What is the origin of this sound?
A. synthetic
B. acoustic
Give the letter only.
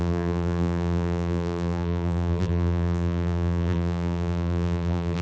A